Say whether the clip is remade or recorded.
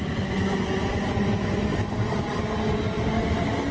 recorded